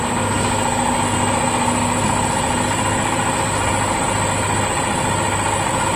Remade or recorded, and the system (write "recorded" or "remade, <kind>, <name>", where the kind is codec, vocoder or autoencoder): recorded